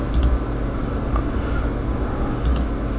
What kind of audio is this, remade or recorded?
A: recorded